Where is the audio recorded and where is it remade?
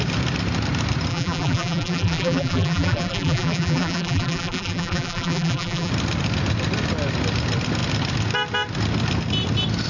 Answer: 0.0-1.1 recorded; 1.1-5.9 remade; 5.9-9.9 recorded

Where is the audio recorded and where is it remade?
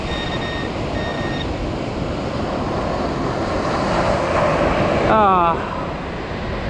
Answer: 0.0-6.7 recorded